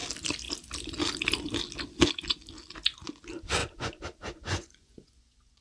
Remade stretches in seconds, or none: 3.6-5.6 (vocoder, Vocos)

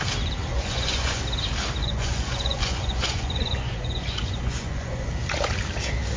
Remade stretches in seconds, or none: 0.5-1.2 (vocoder, Vocos); 1.8-5.1

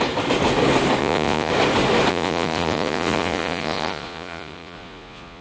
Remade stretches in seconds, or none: 1.0-1.5 (vocoder, Vocos); 2.1-5.4

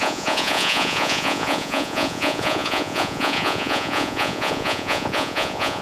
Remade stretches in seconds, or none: 0.0-5.8 (vocoder, Vocos)